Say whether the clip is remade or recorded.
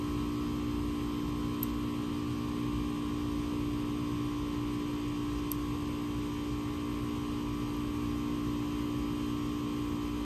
recorded